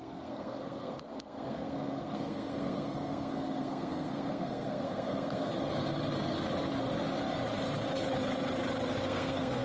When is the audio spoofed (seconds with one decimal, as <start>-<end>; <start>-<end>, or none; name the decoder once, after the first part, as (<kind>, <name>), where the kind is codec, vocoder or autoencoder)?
0.0-5.5 (codec, SNAC); 9.0-9.6